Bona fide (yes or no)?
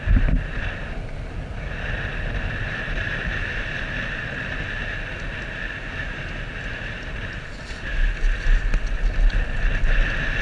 yes